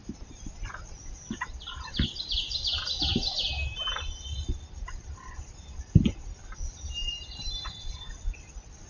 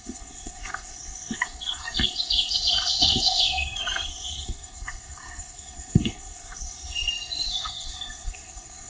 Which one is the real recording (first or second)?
first